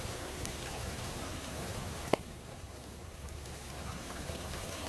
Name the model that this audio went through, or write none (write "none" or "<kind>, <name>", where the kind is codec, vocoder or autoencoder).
codec, SNAC